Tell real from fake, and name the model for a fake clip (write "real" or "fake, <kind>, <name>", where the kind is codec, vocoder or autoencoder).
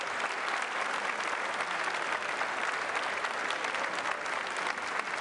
real